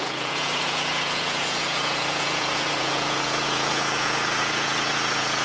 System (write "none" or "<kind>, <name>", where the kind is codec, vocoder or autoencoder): vocoder, Vocos